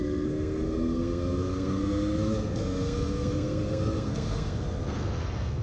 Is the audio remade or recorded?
remade